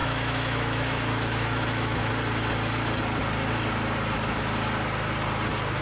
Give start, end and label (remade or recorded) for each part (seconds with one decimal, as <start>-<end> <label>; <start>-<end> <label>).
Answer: 0.0-2.1 remade; 2.1-5.8 recorded